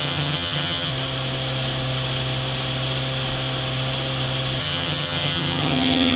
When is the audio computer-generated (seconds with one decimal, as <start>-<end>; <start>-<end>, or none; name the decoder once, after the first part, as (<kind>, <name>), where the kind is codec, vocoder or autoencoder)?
0.0-0.9 (vocoder, HiFi-GAN); 4.6-6.2

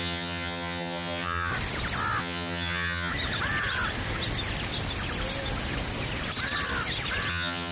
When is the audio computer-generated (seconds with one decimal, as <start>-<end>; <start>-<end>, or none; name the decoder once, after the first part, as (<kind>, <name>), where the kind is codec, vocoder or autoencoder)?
0.0-1.5 (vocoder, HiFi-GAN); 2.2-3.1; 7.3-7.7

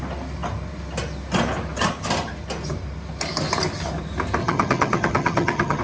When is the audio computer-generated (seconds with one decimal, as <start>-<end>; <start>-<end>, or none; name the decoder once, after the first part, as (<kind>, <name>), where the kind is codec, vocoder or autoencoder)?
4.4-5.8 (vocoder, HiFi-GAN)

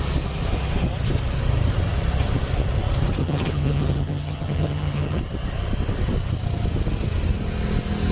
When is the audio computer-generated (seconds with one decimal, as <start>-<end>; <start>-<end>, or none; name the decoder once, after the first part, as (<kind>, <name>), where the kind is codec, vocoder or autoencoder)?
3.2-5.2 (vocoder, HiFi-GAN)

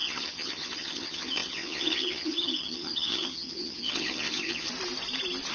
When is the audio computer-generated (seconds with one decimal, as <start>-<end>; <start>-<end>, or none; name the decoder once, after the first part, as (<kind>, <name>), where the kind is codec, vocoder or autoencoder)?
0.0-4.7 (vocoder, HiFi-GAN)

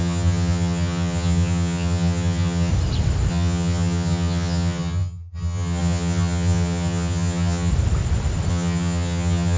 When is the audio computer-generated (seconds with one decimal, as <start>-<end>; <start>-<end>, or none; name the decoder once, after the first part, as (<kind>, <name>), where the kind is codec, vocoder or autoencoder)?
0.0-2.7 (vocoder, HiFi-GAN); 3.3-7.7; 8.5-9.6

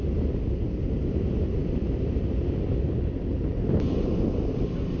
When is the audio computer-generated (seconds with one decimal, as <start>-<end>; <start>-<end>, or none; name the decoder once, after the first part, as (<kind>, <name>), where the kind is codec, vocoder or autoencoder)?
none